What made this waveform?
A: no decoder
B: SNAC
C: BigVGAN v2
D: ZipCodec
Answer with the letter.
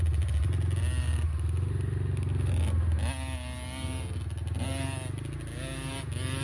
A